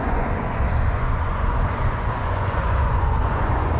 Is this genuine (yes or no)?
no